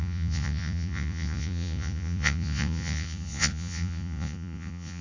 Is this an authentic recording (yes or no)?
no